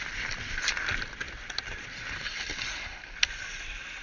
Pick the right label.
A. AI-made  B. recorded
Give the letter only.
B